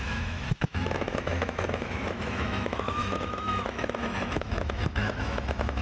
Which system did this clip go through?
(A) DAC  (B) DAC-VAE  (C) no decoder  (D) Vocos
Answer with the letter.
B